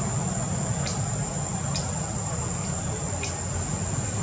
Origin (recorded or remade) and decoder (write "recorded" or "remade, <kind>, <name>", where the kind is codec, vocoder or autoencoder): recorded